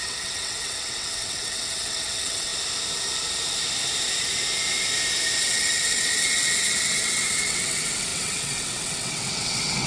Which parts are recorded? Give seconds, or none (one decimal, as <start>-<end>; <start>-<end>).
2.5-5.4